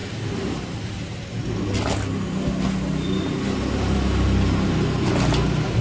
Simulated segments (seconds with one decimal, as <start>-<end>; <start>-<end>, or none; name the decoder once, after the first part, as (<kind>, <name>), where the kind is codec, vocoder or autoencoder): none